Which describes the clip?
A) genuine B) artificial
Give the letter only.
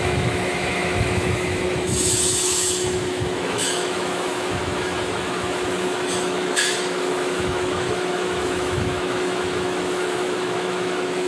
B